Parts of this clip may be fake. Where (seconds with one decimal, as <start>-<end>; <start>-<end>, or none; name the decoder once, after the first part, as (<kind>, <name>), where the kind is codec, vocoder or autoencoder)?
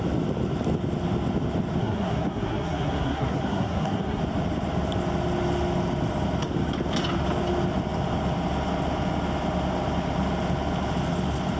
1.8-4.2 (codec, SNAC)